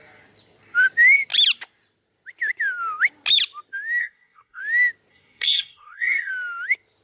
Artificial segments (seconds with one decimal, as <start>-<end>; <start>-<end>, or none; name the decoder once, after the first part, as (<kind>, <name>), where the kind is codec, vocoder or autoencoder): 4.0-4.6 (codec, SNAC); 5.1-6.3